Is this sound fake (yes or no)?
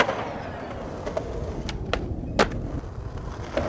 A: no